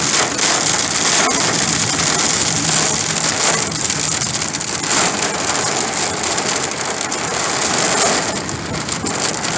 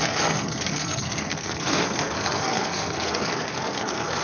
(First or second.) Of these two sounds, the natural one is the first